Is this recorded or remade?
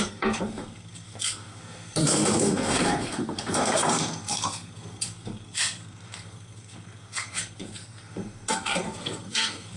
remade